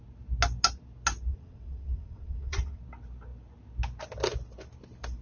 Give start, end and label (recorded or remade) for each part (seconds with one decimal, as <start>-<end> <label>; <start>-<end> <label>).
0.0-1.3 recorded; 1.3-2.8 remade; 2.8-5.2 recorded